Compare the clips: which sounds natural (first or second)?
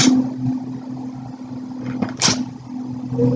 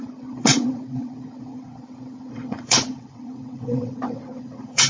first